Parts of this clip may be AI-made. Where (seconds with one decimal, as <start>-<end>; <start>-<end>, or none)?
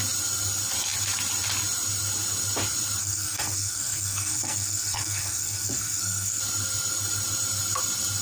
3.0-6.4